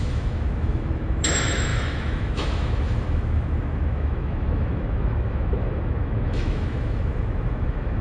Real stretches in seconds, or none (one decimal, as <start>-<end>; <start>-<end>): none